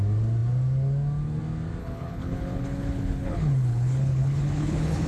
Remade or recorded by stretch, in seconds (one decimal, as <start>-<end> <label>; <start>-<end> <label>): 0.0-1.8 recorded; 1.8-5.1 remade